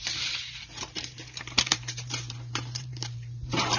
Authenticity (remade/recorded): remade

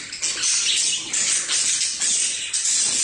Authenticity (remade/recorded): recorded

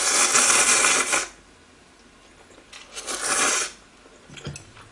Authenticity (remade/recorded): recorded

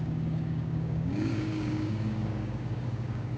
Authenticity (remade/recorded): remade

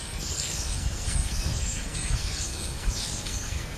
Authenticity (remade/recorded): remade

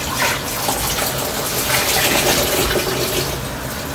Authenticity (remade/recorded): recorded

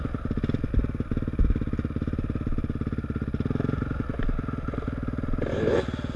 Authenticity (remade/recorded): recorded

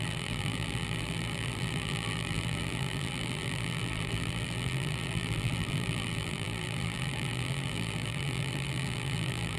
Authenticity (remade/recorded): remade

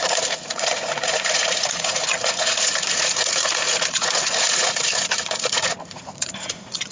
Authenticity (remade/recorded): remade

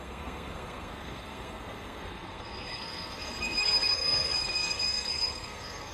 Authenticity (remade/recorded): remade